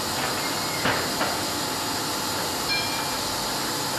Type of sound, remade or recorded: recorded